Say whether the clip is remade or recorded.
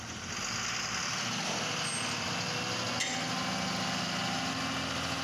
recorded